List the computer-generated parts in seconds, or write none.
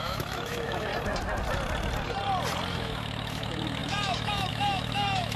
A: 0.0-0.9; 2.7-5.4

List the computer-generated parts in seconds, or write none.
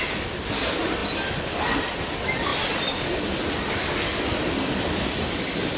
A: none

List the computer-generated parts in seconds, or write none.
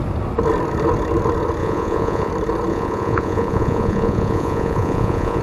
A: 1.6-2.3; 2.7-5.4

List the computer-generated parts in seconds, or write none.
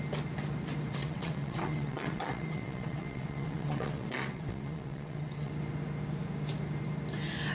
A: 1.0-5.5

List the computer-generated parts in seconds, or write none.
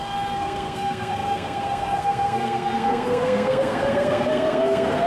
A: 0.0-5.1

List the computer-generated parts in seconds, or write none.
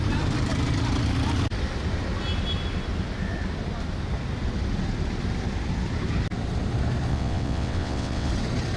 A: 7.1-8.3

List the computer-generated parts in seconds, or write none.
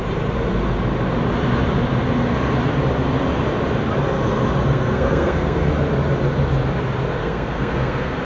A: 4.7-5.7; 7.2-8.2